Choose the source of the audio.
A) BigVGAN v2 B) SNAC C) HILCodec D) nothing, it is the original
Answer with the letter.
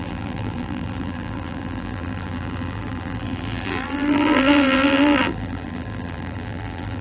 A